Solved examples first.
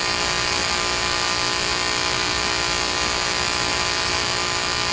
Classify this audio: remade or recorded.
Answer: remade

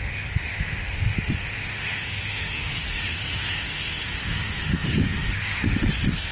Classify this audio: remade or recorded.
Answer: remade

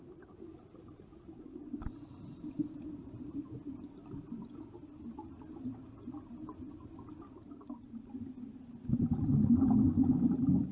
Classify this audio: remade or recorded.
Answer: recorded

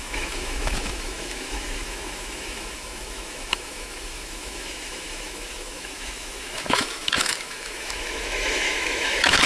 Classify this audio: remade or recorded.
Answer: remade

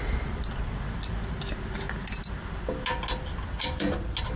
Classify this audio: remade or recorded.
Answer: recorded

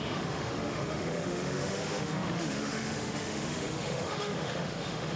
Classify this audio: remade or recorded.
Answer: remade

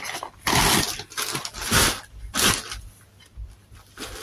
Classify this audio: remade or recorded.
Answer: recorded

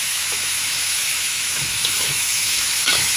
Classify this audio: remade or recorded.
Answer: remade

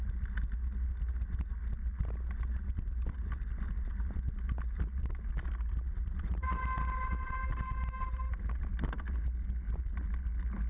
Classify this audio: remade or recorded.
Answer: recorded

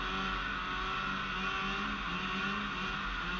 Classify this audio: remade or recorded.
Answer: recorded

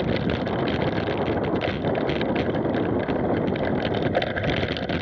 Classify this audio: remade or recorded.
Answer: recorded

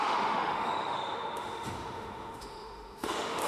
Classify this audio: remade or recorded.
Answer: remade